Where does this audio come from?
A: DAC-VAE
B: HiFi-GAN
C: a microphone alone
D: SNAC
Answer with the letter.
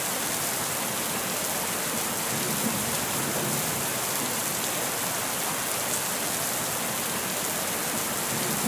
C